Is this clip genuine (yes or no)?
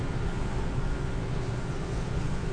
no